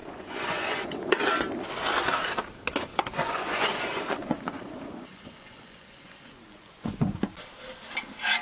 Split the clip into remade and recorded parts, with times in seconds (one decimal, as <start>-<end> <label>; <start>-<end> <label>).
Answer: 0.0-1.2 remade; 1.2-2.9 recorded; 2.9-7.2 remade; 7.2-8.4 recorded